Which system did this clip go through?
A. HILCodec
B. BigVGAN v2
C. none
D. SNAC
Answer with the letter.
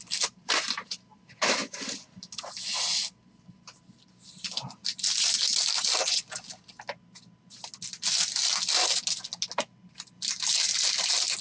C